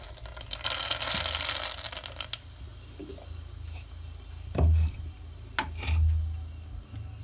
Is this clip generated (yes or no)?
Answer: no